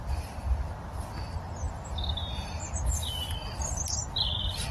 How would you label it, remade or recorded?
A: recorded